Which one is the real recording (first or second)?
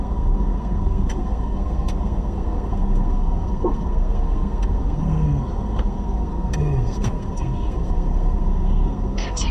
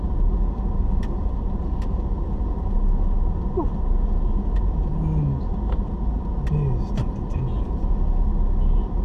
second